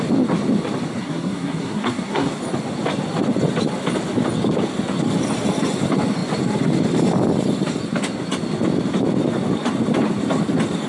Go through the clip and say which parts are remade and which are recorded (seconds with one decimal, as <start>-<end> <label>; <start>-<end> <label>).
0.0-1.0 recorded; 1.0-2.3 remade; 2.3-10.9 recorded